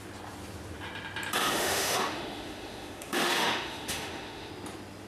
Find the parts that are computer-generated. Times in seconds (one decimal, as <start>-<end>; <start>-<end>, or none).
1.4-4.5

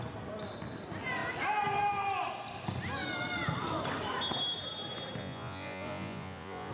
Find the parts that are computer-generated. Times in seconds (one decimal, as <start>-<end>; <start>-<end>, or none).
5.2-6.7

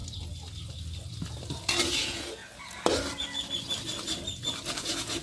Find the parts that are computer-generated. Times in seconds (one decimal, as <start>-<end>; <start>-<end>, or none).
1.8-2.4; 4.8-5.2

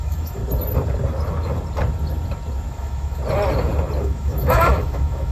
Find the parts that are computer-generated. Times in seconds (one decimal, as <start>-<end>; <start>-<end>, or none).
0.0-0.4; 2.7-3.2; 4.0-5.3

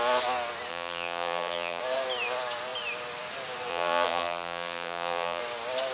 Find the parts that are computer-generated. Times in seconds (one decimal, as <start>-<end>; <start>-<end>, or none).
0.7-1.8; 3.7-5.4

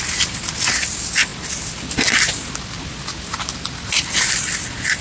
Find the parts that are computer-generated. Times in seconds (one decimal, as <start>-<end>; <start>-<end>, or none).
none